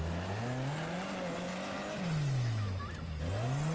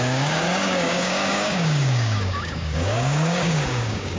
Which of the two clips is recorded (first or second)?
first